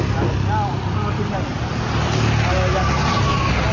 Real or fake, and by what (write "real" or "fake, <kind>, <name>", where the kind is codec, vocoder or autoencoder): real